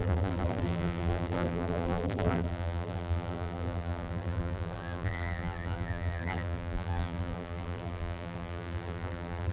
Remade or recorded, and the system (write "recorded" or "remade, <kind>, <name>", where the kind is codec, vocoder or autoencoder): remade, vocoder, BigVGAN v2